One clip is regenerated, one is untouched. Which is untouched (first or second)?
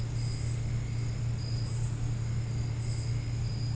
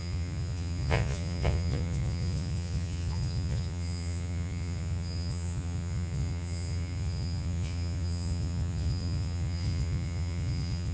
first